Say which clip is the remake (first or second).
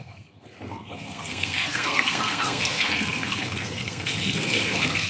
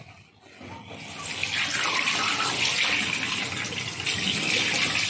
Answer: first